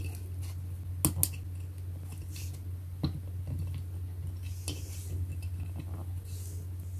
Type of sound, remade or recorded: recorded